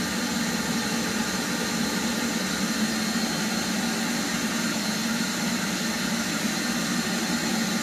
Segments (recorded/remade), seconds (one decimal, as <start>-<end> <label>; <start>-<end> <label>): 0.0-7.8 recorded